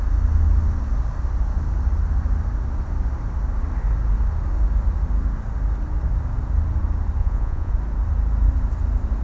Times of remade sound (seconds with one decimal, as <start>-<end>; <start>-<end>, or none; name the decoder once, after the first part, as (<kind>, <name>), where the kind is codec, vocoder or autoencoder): 7.2-7.7 (vocoder, Vocos)